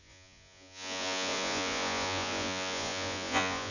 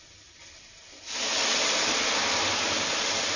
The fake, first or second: first